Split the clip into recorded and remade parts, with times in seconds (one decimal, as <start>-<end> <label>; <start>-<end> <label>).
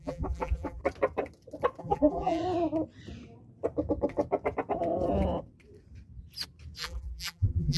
0.0-0.8 remade; 0.8-1.8 recorded; 1.8-2.4 remade; 2.4-6.8 recorded; 6.8-7.8 remade